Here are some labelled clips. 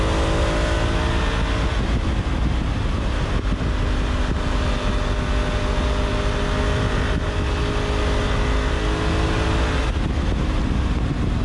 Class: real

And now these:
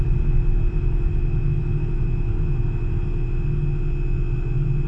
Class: real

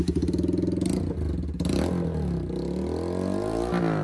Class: real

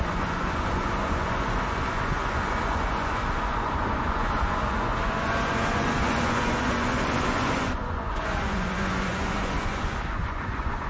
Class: fake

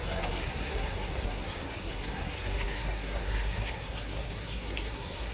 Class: fake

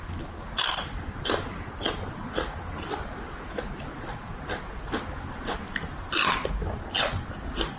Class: real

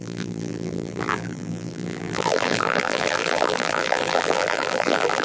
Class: fake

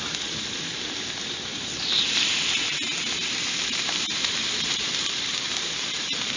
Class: fake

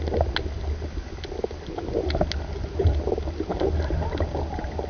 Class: real